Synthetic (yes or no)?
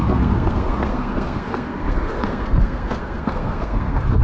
yes